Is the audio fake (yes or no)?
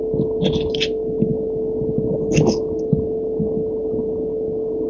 no